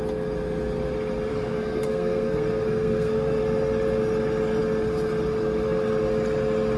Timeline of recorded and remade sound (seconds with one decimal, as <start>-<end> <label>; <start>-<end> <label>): 0.0-1.3 recorded; 1.3-3.4 remade; 3.4-6.8 recorded